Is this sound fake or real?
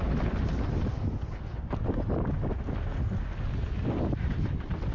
real